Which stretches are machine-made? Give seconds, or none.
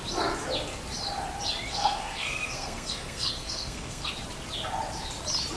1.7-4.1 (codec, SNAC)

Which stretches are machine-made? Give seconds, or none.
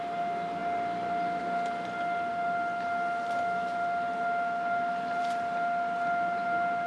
none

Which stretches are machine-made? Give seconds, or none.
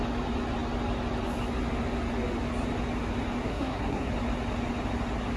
3.4-4.1 (codec, SNAC)